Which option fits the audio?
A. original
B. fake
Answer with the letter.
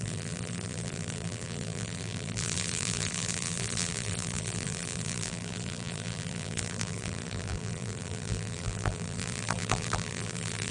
B